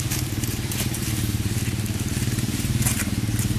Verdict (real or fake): fake